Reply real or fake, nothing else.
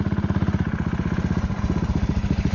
real